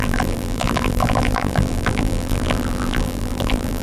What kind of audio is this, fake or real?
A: fake